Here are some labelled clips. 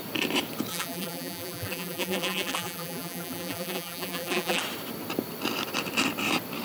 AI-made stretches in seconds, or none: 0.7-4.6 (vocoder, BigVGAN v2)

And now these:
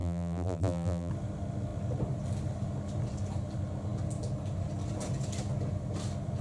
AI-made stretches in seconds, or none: 0.0-1.1 (vocoder, BigVGAN v2)

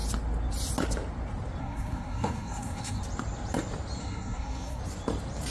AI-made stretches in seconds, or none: 1.6-3.0 (codec, SNAC); 4.0-4.8

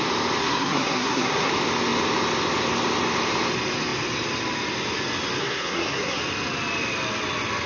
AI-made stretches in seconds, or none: 0.4-1.5 (codec, SNAC); 5.4-6.2

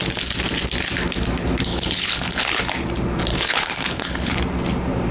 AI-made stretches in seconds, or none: 1.7-2.6 (codec, HILCodec); 3.3-4.4

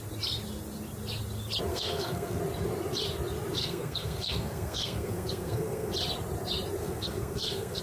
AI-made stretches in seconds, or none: 1.7-2.4 (codec, SNAC); 3.6-5.9; 6.8-7.8

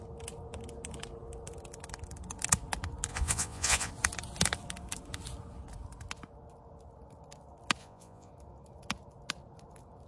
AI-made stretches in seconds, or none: 3.1-3.9 (vocoder, Vocos); 7.8-8.3

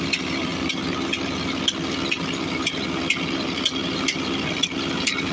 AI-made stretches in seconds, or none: none